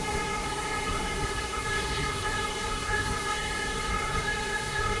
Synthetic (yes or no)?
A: yes